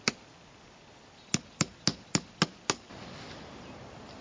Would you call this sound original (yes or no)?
yes